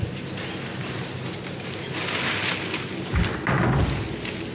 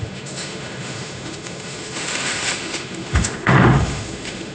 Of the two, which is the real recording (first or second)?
first